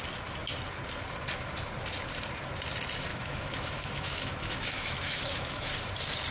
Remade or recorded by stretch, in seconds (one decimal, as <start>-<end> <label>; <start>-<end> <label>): 0.0-3.1 recorded; 3.1-5.7 remade; 5.7-6.3 recorded